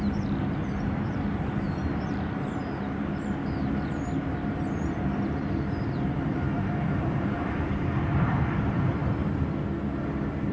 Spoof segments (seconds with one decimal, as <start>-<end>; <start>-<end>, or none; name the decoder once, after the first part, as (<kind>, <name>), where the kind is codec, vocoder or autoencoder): 0.0-3.4 (vocoder, BigVGAN v2); 4.5-9.0